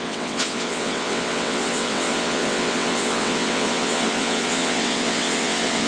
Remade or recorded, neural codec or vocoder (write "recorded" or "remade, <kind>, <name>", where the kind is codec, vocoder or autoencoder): remade, vocoder, WaveNeXt